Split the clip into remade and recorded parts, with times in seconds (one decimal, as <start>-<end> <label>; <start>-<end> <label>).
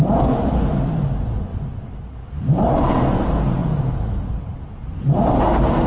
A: 0.0-1.5 remade; 1.5-2.4 recorded; 2.4-3.6 remade; 3.6-4.3 recorded; 4.3-5.9 remade